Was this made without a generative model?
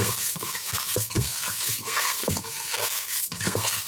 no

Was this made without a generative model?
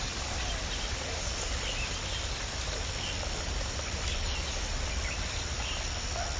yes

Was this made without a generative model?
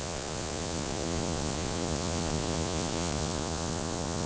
no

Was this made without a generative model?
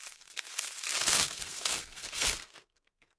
no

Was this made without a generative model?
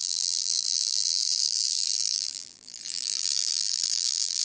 no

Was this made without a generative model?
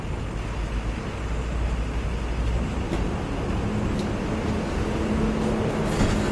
yes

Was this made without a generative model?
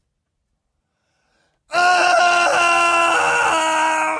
yes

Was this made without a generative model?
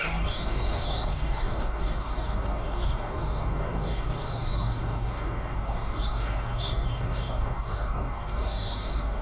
no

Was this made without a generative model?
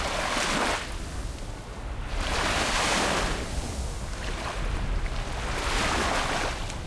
yes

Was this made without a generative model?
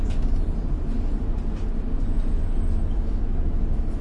yes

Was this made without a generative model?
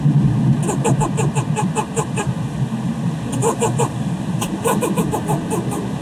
yes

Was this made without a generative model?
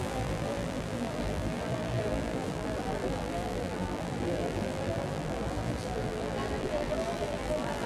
no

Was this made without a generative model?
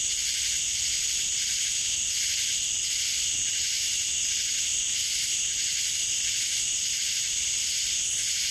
yes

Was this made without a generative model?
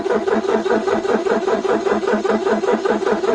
no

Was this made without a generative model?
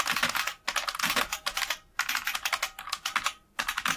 yes